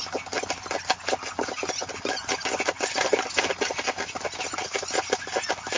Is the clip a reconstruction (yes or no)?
no